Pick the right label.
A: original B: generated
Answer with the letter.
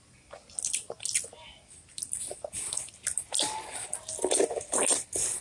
A